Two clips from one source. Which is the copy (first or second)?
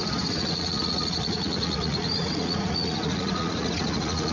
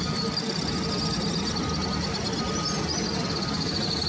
first